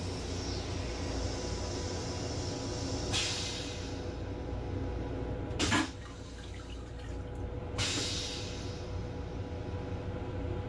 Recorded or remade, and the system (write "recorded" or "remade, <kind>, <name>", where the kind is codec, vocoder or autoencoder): recorded